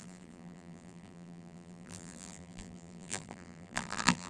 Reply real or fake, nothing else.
fake